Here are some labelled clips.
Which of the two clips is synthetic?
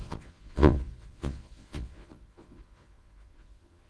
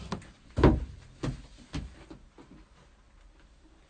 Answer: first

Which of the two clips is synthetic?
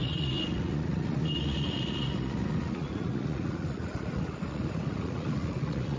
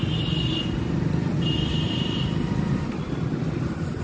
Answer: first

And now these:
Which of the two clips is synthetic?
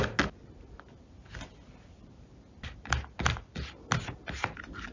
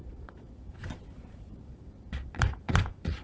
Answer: second